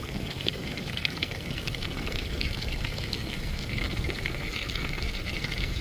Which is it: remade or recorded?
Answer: remade